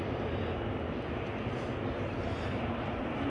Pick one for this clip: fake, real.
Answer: real